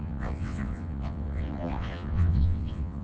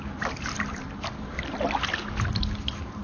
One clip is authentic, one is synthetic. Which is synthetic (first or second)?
first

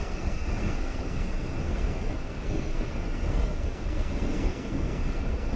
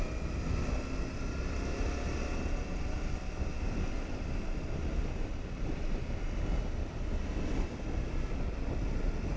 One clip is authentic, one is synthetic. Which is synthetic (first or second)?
first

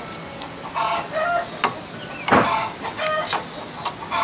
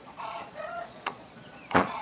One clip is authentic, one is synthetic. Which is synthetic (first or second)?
second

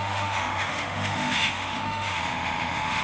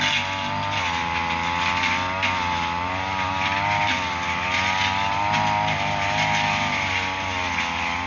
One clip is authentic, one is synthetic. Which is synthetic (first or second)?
first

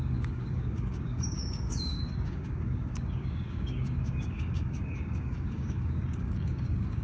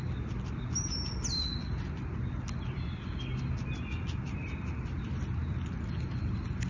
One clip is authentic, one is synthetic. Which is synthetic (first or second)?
first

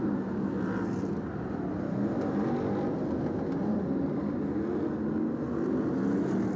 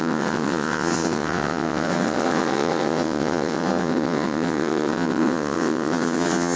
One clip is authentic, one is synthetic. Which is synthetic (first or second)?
second